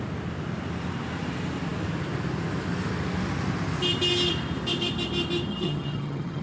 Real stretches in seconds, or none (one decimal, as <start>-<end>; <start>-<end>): 0.0-5.5